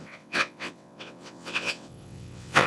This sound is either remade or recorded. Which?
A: remade